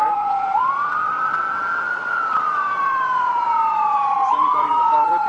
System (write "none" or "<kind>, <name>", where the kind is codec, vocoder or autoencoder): vocoder, WaveNeXt